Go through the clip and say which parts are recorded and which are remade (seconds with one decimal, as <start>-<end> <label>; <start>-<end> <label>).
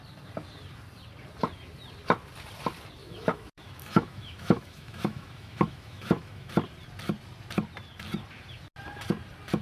0.0-3.0 recorded; 3.0-6.5 remade; 6.5-9.6 recorded